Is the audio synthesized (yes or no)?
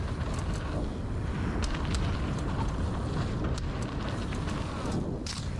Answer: no